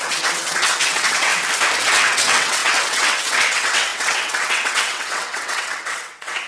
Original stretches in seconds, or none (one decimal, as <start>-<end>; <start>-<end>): 1.3-1.8